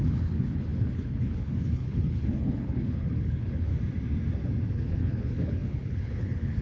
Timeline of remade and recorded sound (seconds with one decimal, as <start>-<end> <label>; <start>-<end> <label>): 0.0-3.7 remade; 3.7-4.7 recorded; 4.7-6.6 remade